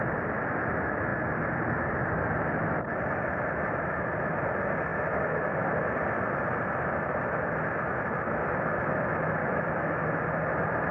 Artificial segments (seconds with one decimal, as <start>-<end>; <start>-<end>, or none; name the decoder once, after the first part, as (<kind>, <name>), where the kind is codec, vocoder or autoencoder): 4.9-5.5 (autoencoder, DAC-VAE); 9.4-10.0